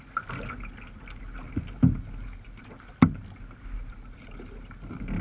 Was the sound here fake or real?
real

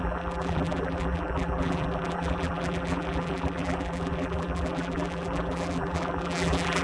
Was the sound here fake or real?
fake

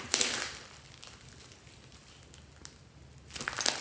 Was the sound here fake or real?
real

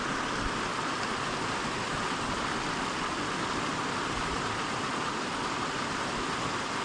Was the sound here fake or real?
real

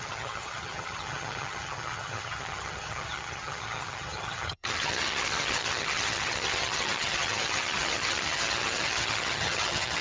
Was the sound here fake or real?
fake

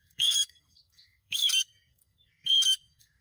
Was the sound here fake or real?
fake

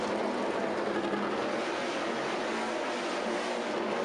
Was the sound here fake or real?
real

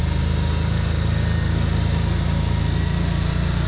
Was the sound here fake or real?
real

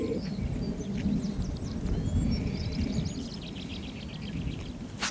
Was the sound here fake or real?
real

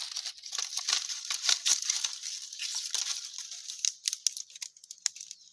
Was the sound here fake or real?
real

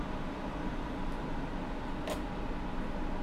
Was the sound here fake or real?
real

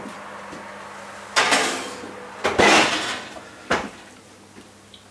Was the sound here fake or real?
real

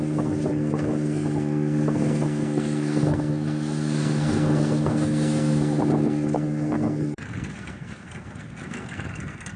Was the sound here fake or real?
fake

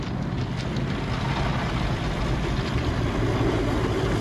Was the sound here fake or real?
real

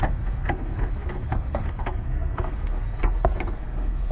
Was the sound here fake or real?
fake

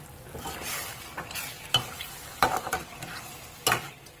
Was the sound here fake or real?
real